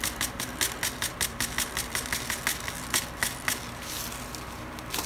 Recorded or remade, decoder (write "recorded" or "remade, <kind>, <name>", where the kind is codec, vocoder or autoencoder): recorded